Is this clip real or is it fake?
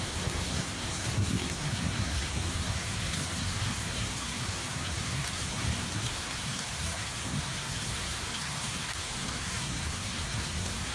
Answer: fake